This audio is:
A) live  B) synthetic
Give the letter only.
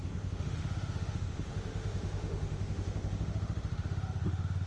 B